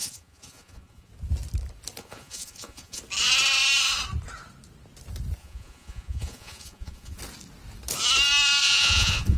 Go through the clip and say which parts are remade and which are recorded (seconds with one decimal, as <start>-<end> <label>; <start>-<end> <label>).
0.0-1.1 remade; 1.1-2.0 recorded; 2.0-3.0 remade; 3.0-5.4 recorded; 5.4-7.2 remade; 7.2-8.6 recorded; 8.6-9.4 remade